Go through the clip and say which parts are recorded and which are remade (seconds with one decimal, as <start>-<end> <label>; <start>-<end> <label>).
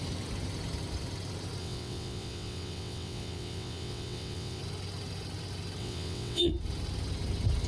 0.0-1.6 recorded; 1.6-4.6 remade; 4.6-5.8 recorded; 5.8-6.5 remade; 6.5-7.7 recorded